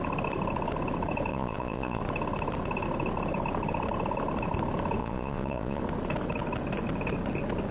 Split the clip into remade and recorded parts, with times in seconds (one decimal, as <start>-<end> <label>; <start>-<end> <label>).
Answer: 0.0-1.3 recorded; 1.3-2.0 remade; 2.0-5.0 recorded; 5.0-5.8 remade; 5.8-7.7 recorded